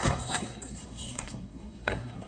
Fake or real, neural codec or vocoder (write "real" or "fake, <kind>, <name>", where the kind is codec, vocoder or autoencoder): fake, codec, SNAC